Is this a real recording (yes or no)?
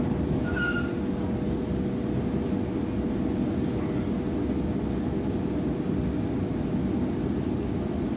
yes